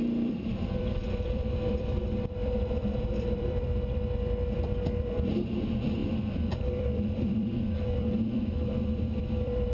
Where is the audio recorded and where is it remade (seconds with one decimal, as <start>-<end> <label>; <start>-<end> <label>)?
0.0-9.7 remade